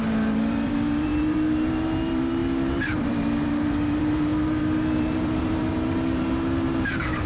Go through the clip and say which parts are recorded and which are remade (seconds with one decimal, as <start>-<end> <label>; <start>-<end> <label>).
0.0-7.3 remade